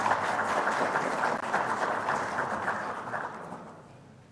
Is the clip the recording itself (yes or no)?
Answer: yes